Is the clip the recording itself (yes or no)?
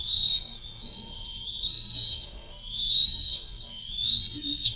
no